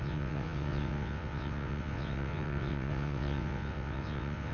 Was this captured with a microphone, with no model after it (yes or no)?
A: no